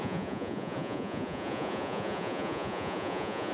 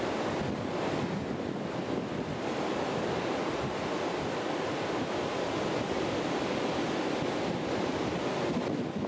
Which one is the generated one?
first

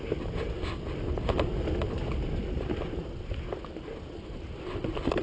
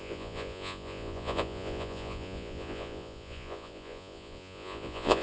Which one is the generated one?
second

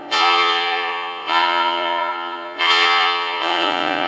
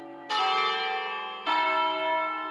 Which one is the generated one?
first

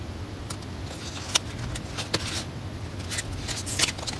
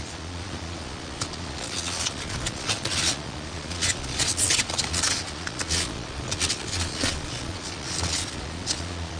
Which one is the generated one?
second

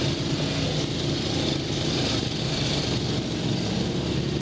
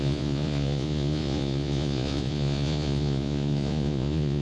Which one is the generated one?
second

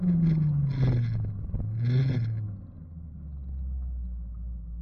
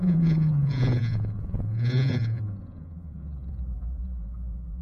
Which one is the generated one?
second